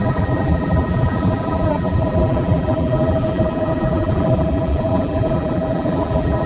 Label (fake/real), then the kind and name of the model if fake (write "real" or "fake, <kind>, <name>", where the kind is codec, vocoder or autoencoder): fake, vocoder, BigVGAN v2